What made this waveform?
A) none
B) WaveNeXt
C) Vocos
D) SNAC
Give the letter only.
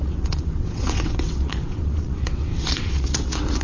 B